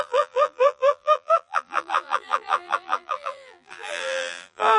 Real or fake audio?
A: fake